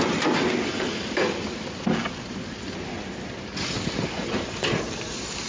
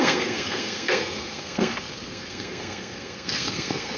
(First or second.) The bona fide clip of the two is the first